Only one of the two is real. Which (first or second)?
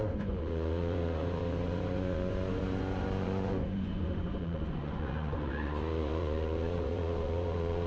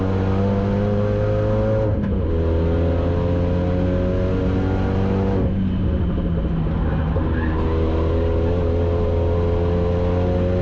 second